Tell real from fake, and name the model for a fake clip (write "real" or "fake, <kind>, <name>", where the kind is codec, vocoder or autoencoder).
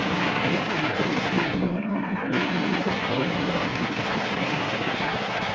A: fake, codec, SNAC